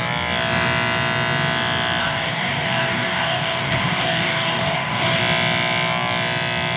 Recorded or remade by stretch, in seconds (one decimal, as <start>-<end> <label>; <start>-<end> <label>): 0.0-2.0 recorded; 2.0-5.2 remade; 5.2-6.8 recorded